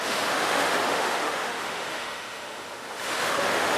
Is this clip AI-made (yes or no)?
yes